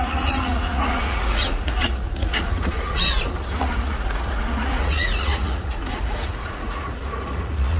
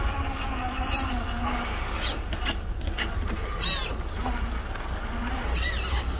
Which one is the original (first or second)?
second